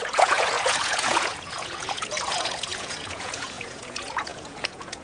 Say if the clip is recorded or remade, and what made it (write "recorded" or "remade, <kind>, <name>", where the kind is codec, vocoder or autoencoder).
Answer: remade, vocoder, Vocos